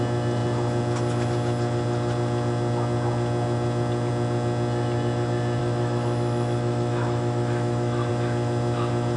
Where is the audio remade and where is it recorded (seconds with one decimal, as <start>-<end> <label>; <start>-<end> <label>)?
0.0-5.6 recorded; 5.6-8.1 remade; 8.1-9.2 recorded